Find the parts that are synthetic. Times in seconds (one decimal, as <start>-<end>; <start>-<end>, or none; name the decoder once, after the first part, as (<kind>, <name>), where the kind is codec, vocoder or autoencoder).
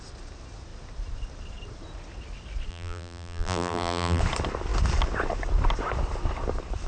2.7-4.2 (vocoder, BigVGAN v2)